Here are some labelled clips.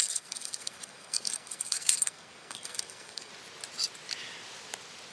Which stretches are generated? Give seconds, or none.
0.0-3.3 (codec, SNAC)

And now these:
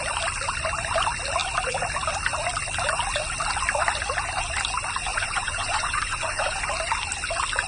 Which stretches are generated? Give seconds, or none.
5.1-6.6 (vocoder, Vocos)

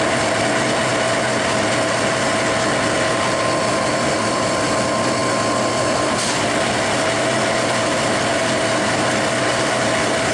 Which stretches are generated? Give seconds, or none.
none